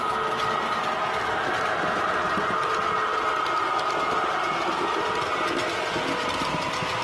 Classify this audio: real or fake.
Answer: real